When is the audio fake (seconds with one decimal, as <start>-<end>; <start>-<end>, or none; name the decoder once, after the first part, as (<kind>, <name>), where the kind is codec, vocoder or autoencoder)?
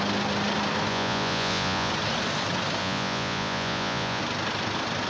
0.9-1.9 (vocoder, Vocos); 2.8-4.2